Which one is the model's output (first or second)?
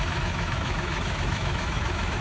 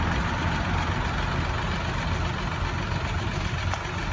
first